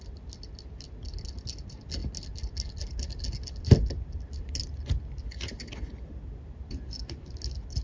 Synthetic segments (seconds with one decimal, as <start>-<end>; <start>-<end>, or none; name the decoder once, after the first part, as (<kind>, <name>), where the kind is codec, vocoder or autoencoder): none